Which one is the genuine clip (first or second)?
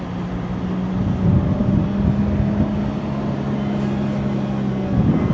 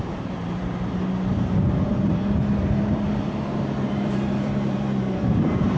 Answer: first